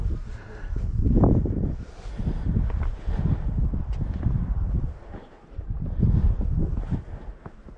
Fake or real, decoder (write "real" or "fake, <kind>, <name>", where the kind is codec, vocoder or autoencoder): real